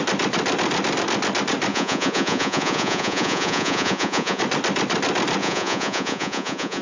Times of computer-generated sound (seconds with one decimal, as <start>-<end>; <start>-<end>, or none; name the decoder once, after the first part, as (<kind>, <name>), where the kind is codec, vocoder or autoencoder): 1.7-4.4 (vocoder, Vocos); 5.4-6.8